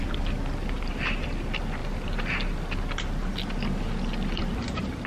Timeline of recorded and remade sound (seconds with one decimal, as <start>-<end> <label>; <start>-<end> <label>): 0.0-5.1 recorded